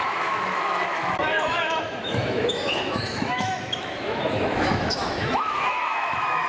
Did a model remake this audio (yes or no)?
yes